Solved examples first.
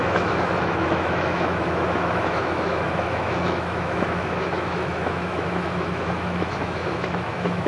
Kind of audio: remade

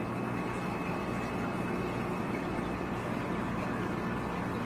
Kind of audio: recorded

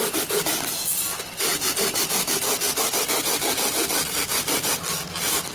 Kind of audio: remade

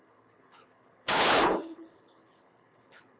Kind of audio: remade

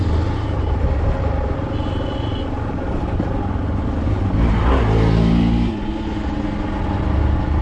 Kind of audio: recorded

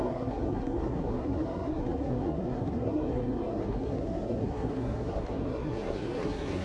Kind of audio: remade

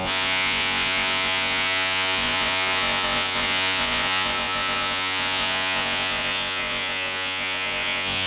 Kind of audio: remade